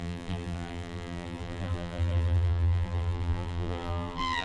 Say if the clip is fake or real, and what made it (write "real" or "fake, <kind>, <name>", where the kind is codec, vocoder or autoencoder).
fake, vocoder, BigVGAN v2